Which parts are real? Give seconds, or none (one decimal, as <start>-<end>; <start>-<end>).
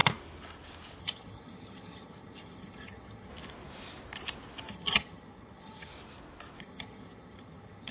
0.0-1.0; 3.3-4.7; 5.9-6.6